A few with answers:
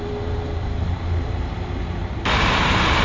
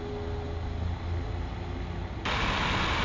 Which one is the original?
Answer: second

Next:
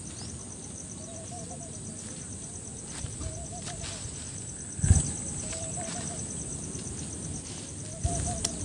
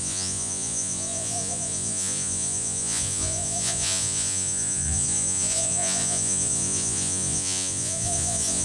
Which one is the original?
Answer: first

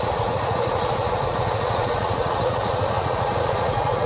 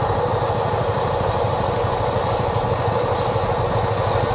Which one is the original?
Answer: second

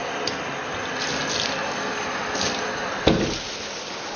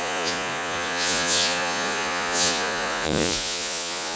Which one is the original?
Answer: first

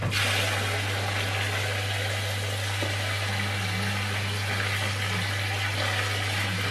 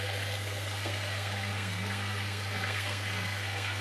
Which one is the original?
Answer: first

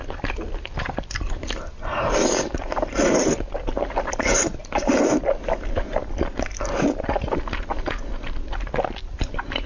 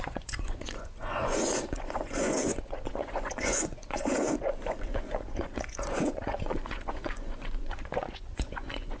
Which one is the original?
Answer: first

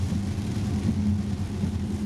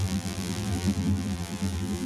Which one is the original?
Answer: first